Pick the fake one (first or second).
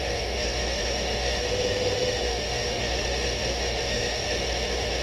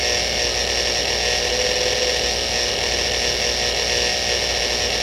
first